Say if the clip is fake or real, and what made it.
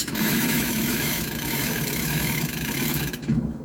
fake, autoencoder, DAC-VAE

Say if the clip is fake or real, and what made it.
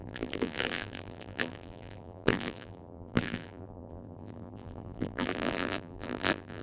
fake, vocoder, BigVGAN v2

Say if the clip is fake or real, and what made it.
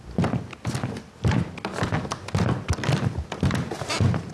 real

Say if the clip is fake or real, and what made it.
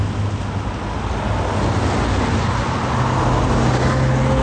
real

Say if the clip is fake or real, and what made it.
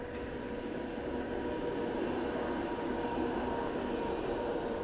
real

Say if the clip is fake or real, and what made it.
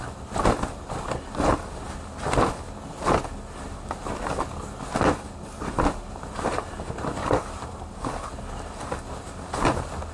real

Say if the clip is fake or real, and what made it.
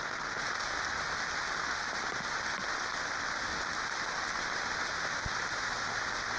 real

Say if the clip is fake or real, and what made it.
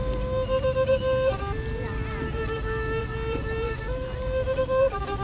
real